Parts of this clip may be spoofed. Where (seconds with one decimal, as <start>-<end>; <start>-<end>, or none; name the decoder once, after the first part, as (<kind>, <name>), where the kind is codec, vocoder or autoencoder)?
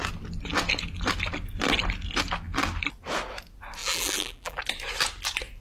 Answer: 3.8-4.6 (vocoder, BigVGAN v2)